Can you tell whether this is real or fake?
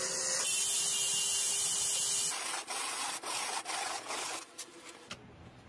real